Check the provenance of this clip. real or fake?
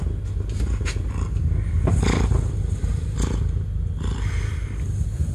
real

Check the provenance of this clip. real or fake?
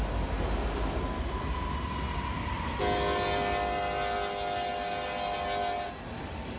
real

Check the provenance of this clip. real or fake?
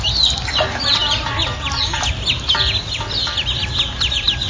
real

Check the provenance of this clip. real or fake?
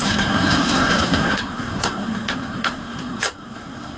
fake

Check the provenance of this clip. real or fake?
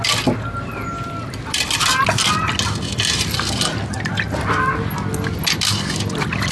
real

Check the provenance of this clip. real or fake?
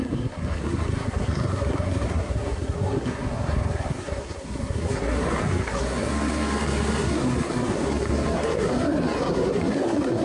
fake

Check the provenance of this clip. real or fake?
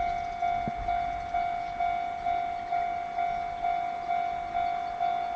real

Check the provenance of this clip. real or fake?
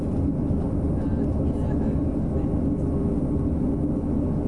real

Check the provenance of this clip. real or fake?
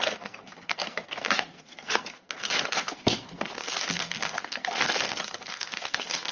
fake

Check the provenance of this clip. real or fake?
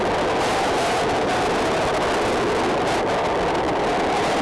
real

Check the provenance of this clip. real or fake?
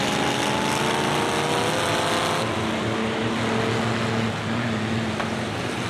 real